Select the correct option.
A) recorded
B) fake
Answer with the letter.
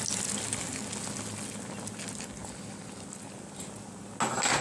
A